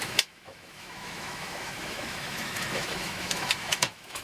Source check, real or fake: fake